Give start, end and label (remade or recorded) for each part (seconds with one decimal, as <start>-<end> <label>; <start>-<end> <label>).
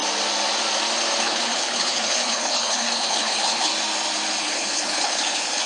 0.0-1.2 recorded; 1.2-3.7 remade; 3.7-4.4 recorded; 4.4-5.7 remade